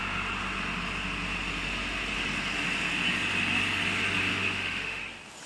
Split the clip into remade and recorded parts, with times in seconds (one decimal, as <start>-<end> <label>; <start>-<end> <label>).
0.0-4.3 recorded; 4.3-5.0 remade; 5.0-5.5 recorded